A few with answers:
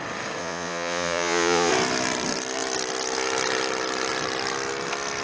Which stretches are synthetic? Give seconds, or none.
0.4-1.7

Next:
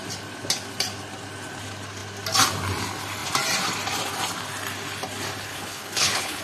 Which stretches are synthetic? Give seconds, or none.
5.5-6.4